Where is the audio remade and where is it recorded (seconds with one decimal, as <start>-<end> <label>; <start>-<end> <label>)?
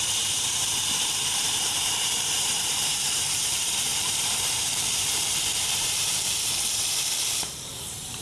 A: 0.0-8.2 remade